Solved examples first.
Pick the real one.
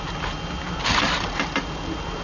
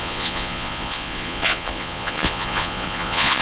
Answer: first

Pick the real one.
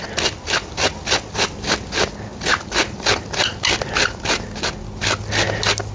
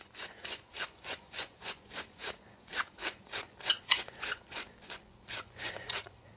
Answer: first